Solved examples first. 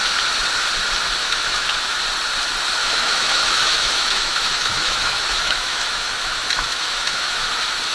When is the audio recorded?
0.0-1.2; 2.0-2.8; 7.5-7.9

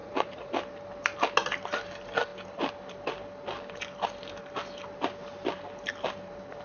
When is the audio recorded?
0.5-6.6

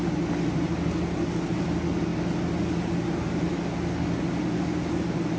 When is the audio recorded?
0.0-5.4

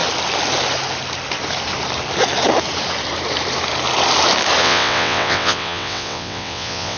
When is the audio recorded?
0.0-4.6

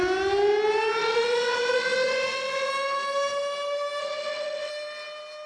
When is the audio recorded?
0.0-1.0; 2.7-4.0; 4.7-5.5